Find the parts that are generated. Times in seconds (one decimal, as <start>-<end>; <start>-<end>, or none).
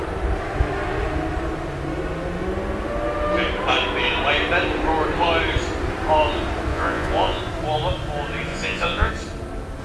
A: 6.7-7.4; 8.5-9.1